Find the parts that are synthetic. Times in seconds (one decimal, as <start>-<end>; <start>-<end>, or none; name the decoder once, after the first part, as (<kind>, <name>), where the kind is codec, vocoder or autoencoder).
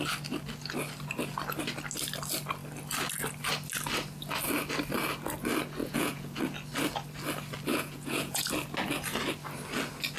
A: 5.8-6.4 (vocoder, Vocos); 7.7-8.5